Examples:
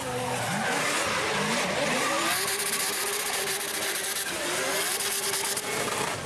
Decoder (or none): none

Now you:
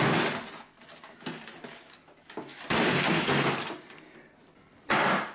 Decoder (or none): none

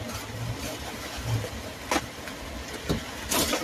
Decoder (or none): none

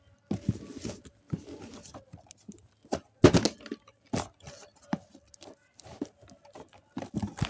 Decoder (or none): none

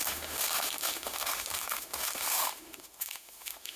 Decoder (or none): autoencoder, DAC-VAE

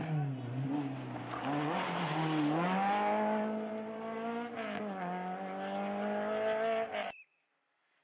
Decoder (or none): none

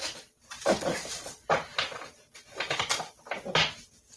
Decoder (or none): none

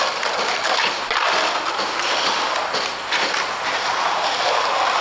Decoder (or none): none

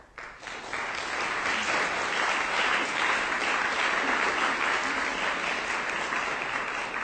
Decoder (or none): none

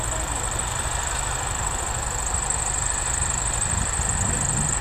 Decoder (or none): vocoder, BigVGAN v2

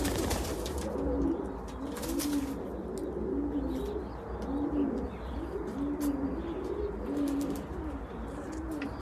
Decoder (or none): none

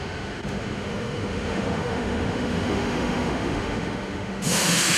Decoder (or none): autoencoder, DAC-VAE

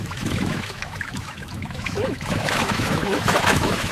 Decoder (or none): autoencoder, DAC-VAE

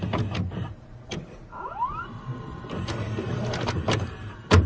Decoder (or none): vocoder, BigVGAN v2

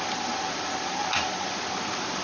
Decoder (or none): none